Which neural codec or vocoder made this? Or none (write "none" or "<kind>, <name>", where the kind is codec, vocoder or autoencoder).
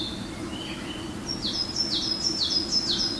none